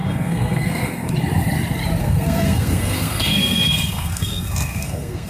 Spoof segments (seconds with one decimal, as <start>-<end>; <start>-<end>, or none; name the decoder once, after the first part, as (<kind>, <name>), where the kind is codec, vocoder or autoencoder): 0.0-1.1 (codec, SNAC); 2.0-5.3